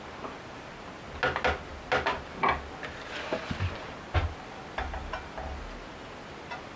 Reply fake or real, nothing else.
real